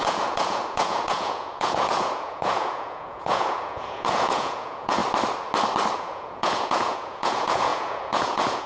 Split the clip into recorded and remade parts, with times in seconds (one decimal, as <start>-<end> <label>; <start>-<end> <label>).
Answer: 0.0-5.0 remade; 5.0-5.9 recorded; 5.9-8.7 remade